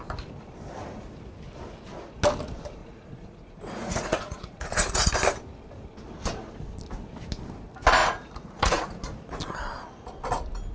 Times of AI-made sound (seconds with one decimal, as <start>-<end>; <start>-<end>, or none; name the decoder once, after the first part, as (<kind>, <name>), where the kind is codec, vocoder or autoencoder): 2.8-5.1 (vocoder, Vocos); 8.0-9.0

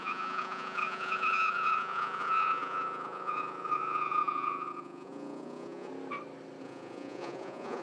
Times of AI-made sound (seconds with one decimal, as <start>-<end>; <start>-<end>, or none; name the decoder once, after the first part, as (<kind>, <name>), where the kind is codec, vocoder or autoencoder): 0.0-5.9 (vocoder, Vocos); 6.6-7.8

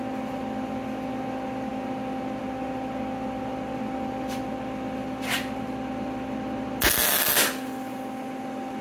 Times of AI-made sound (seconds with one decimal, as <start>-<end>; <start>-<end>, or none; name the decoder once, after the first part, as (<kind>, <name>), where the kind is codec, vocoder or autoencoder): none

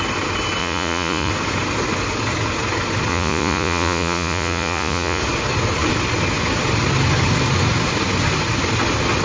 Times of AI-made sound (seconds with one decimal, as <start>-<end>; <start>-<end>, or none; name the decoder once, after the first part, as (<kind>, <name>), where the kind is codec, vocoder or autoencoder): 0.6-1.3 (vocoder, Vocos); 3.1-5.2

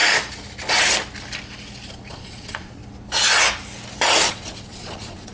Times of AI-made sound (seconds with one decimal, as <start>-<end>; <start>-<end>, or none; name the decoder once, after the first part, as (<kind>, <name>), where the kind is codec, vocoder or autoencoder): 2.1-2.8 (vocoder, Vocos); 4.3-5.3

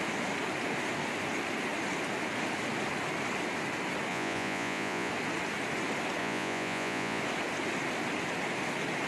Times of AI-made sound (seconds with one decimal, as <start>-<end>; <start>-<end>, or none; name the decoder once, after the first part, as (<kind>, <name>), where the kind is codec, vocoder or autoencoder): 4.1-5.1 (vocoder, Vocos); 6.2-7.2

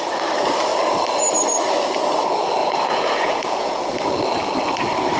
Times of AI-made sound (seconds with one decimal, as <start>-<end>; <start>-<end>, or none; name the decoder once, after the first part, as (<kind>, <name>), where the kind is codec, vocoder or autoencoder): 2.6-3.8 (vocoder, Vocos)

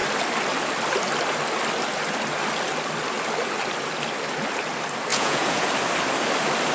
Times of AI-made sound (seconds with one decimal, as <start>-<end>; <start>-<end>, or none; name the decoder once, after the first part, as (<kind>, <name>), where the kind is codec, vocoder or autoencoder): 5.1-5.7 (vocoder, Vocos)